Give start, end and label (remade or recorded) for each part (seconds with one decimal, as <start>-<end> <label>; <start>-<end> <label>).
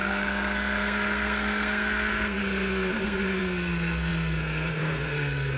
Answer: 0.0-5.6 remade